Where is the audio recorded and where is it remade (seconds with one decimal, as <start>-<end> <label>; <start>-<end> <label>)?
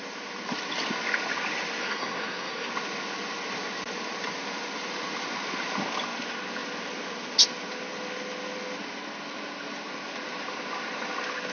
0.0-1.8 recorded; 1.8-2.7 remade; 2.7-11.5 recorded